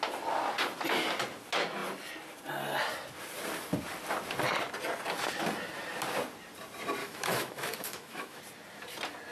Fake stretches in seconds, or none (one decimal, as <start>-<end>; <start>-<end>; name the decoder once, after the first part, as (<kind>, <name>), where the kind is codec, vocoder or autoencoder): 7.0-8.4 (autoencoder, DAC-VAE)

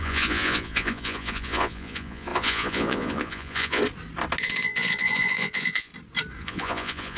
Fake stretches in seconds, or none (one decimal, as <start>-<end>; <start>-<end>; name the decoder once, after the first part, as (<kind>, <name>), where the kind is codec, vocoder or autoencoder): 0.0-3.8 (vocoder, Vocos); 4.4-5.9; 6.4-7.2

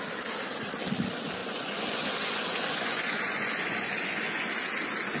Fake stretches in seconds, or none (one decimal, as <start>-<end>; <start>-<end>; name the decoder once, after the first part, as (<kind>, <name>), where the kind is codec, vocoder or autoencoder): 1.4-4.5 (vocoder, Vocos)